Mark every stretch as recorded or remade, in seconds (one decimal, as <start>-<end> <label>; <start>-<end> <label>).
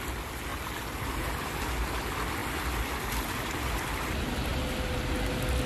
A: 0.0-0.5 recorded; 0.5-1.3 remade; 1.3-5.7 recorded